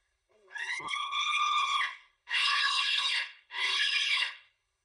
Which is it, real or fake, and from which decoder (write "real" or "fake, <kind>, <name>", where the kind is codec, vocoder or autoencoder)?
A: fake, codec, HILCodec